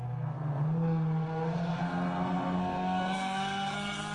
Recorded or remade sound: remade